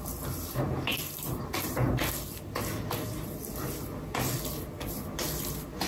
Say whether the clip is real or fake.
real